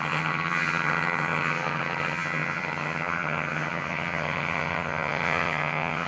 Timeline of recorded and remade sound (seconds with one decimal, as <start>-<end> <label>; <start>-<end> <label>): 0.0-6.1 remade